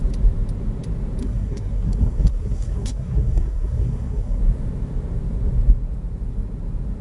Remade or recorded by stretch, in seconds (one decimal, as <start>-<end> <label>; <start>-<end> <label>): 0.0-1.2 recorded; 1.2-4.4 remade; 4.4-7.0 recorded